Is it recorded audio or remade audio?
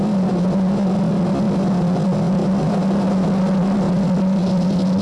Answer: recorded